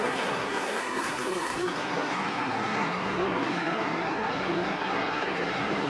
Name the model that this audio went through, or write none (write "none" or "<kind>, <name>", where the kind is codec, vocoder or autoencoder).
codec, SNAC